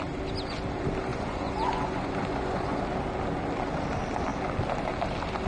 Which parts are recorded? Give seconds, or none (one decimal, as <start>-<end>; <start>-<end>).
0.0-1.1; 2.8-5.5